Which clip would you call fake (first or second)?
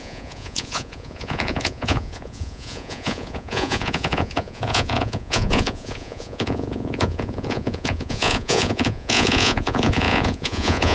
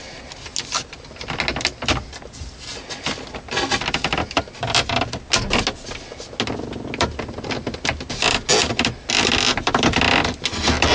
first